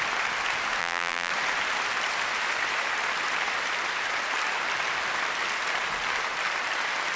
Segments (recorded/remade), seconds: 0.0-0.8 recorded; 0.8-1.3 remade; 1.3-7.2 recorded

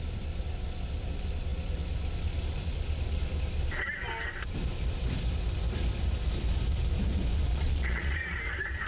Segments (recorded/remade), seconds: 0.0-7.5 recorded; 7.5-8.4 remade; 8.4-8.9 recorded

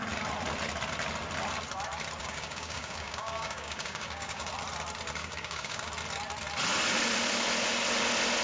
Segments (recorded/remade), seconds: 0.0-2.2 recorded; 2.2-4.5 remade; 4.5-5.2 recorded; 5.2-5.9 remade; 5.9-8.4 recorded

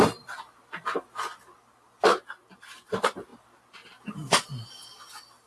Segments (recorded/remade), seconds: 0.0-5.5 recorded

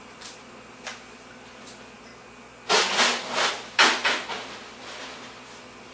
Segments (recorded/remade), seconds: 0.0-2.1 remade; 2.1-3.5 recorded; 3.5-5.9 remade